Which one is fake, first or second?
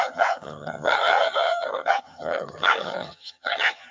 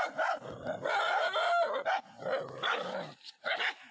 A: first